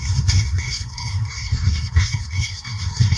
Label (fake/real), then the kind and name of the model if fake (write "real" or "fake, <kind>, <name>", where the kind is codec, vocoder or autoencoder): fake, codec, SNAC